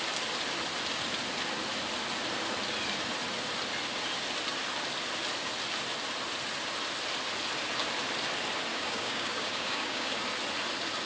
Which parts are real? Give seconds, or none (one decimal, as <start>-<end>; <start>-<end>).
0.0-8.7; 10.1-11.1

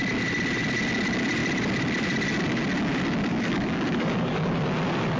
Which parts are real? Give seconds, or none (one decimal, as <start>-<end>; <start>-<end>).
0.0-3.3; 4.5-5.2

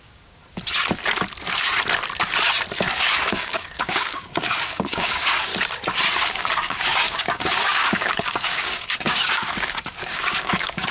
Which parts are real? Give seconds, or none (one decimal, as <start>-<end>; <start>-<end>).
0.4-2.9; 5.5-6.2

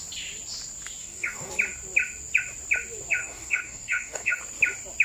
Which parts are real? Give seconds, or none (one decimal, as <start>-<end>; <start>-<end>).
0.0-1.0; 1.5-3.2; 4.4-5.0